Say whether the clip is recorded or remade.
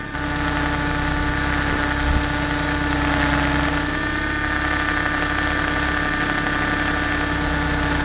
recorded